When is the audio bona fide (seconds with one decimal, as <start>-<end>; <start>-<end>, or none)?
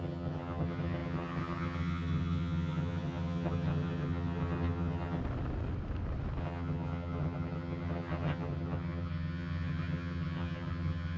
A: 5.2-6.4